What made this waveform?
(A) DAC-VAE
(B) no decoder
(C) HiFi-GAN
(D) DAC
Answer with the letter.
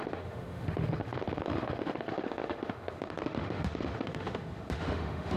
A